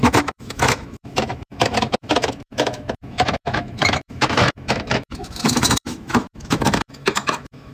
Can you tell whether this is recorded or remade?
remade